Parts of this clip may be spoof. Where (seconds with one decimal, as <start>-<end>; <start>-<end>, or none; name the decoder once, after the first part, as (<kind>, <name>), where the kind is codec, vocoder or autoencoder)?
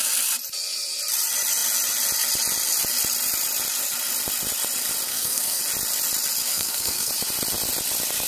5.1-5.6 (codec, SNAC); 6.5-7.1